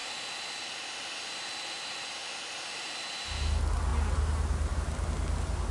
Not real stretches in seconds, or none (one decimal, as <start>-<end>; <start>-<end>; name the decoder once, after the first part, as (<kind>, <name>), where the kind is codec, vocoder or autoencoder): none